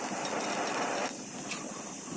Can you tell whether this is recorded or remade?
recorded